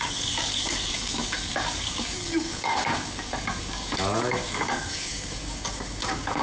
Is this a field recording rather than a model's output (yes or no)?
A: no